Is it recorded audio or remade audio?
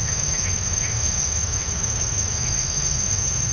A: remade